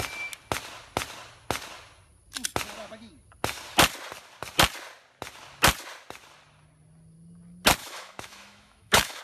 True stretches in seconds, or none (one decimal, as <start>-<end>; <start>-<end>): 0.0-7.8